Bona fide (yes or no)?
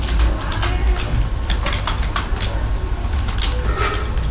yes